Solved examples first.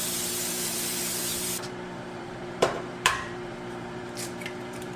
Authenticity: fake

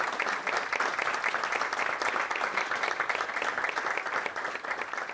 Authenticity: real